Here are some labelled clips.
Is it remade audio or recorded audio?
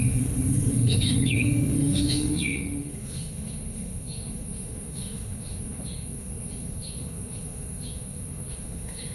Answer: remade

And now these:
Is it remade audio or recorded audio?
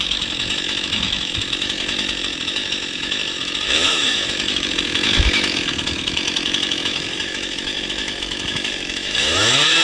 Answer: remade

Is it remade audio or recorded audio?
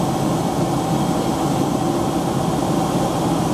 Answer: recorded